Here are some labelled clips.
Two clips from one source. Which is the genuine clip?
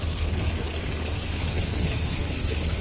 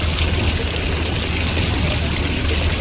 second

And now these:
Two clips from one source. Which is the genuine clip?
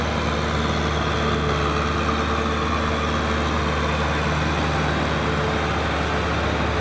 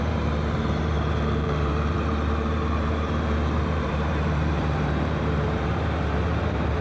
first